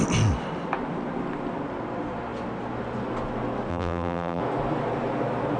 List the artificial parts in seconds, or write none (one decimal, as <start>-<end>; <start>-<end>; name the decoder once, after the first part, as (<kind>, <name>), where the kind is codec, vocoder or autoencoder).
3.7-4.4 (vocoder, BigVGAN v2)